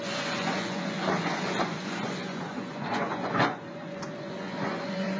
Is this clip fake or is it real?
fake